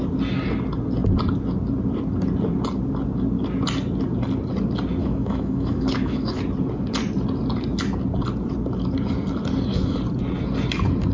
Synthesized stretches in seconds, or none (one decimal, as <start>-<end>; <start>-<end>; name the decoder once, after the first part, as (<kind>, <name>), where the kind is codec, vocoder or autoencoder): 5.0-6.4 (autoencoder, DAC-VAE)